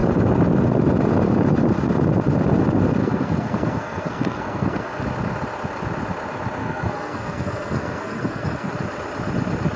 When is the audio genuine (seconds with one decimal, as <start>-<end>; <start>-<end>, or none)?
0.0-3.0; 5.0-6.6; 8.7-9.8